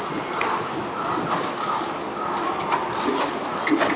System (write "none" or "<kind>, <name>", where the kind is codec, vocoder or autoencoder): none